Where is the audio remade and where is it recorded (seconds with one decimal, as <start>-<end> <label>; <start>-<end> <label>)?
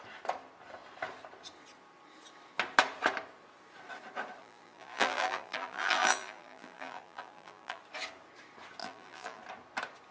0.0-4.4 recorded; 4.4-7.8 remade; 7.8-8.8 recorded; 8.8-9.4 remade; 9.4-10.1 recorded